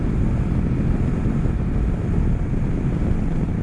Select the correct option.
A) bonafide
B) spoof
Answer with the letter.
A